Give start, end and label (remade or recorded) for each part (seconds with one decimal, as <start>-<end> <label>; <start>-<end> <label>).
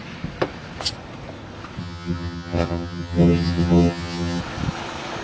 0.0-1.8 recorded; 1.8-4.4 remade; 4.4-5.2 recorded